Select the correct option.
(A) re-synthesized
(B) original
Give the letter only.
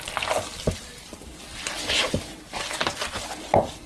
B